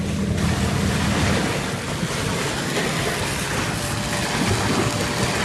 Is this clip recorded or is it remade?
recorded